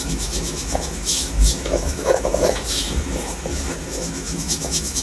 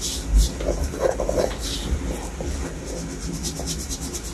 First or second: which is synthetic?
first